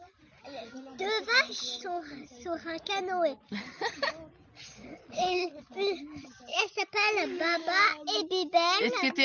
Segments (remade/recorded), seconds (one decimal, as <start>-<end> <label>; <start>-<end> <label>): 0.0-5.0 recorded; 5.0-5.6 remade; 5.6-9.2 recorded